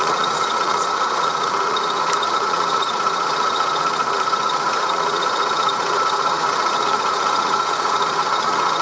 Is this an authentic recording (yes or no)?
no